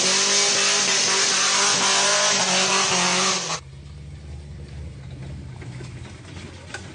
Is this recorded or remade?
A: recorded